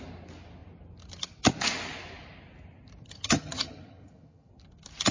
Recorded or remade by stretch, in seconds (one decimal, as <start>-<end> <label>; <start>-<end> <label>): 0.0-3.0 recorded; 3.0-4.5 remade; 4.5-5.1 recorded